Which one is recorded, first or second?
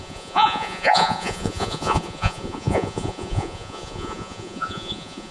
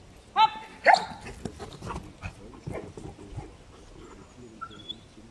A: second